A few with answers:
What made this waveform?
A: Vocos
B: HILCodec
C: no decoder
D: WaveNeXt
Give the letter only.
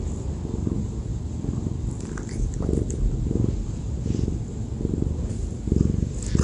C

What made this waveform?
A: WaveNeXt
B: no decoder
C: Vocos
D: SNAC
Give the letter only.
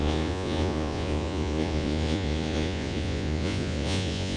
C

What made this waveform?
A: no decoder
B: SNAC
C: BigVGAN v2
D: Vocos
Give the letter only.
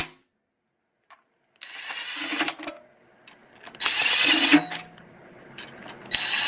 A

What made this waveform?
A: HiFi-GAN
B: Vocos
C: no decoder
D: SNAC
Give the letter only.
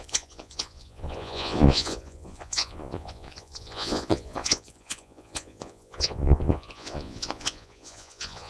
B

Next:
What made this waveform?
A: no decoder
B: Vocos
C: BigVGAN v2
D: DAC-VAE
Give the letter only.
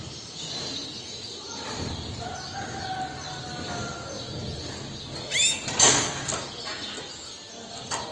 A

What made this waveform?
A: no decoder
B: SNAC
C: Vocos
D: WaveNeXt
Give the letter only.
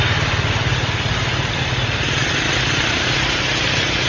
A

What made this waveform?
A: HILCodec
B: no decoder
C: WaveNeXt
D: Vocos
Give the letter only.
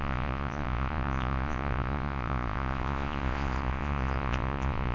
D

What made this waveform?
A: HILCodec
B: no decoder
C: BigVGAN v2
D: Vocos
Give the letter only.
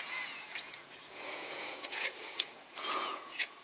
D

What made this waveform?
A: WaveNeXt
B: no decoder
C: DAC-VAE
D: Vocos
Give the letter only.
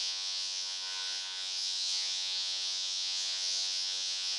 D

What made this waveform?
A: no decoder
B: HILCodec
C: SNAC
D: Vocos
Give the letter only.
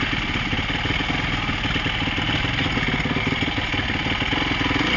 A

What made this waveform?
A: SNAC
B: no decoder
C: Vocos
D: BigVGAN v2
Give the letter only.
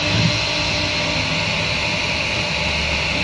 B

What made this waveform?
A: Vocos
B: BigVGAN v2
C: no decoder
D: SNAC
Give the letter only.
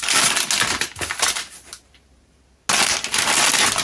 C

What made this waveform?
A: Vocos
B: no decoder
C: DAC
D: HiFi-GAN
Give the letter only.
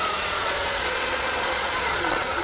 A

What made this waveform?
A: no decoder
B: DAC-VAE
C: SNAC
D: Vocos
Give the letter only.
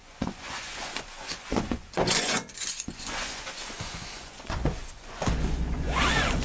D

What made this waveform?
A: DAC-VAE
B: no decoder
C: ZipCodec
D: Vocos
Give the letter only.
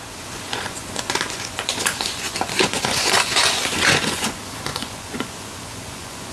D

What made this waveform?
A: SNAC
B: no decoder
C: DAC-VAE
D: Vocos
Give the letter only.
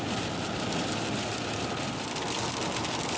B